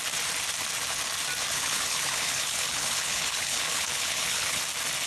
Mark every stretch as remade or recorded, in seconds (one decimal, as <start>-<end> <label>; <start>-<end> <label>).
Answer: 0.0-1.5 recorded; 1.5-4.6 remade; 4.6-5.1 recorded